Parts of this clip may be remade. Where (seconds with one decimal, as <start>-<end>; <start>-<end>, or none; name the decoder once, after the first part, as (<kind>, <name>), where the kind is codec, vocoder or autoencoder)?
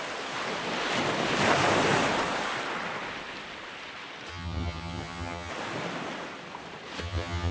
4.3-5.5 (vocoder, HiFi-GAN); 7.0-7.5